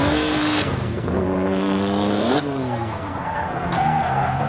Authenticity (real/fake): fake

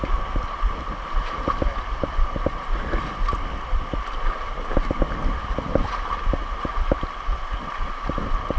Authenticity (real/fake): real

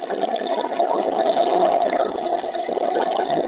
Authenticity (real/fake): fake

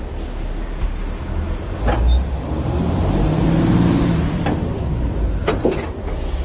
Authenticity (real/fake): real